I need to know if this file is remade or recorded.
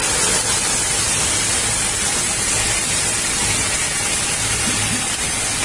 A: recorded